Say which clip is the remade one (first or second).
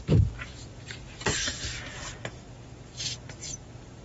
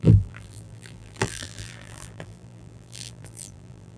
second